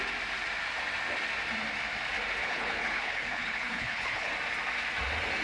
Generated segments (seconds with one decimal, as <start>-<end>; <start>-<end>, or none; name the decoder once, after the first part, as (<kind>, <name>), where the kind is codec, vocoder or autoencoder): 2.4-4.3 (codec, HILCodec)